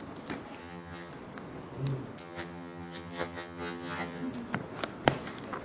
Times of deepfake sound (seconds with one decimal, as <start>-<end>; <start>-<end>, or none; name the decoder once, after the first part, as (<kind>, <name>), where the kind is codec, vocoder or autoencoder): 0.6-1.1 (vocoder, HiFi-GAN); 2.2-4.3